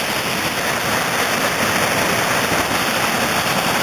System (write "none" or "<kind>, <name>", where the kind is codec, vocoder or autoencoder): vocoder, BigVGAN v2